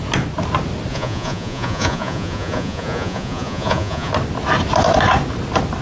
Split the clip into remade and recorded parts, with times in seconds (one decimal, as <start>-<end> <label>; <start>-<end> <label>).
0.0-0.9 recorded; 0.9-4.1 remade; 4.1-5.8 recorded